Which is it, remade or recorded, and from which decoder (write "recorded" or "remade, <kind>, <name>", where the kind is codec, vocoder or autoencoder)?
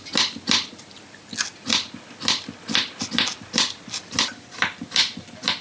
recorded